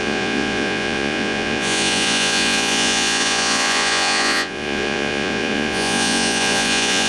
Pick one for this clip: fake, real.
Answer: fake